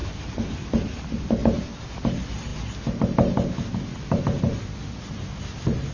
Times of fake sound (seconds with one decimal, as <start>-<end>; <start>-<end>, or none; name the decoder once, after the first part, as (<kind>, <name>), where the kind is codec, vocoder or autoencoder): none